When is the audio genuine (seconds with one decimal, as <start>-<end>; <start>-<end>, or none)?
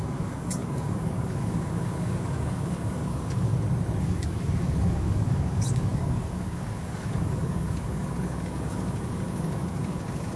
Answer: 3.5-4.0